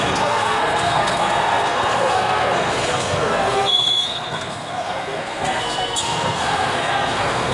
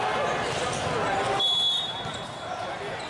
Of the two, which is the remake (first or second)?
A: first